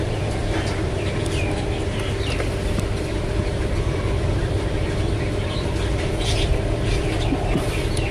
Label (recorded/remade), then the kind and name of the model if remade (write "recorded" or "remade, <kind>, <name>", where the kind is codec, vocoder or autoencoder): remade, vocoder, BigVGAN v2